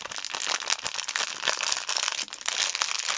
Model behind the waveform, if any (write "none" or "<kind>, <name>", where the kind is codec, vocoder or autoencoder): none